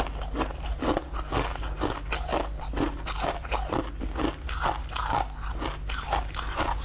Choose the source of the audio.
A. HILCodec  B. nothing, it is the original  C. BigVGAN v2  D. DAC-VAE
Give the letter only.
B